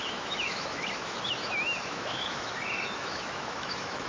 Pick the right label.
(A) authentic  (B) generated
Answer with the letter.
B